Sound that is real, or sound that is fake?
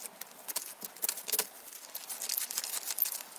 real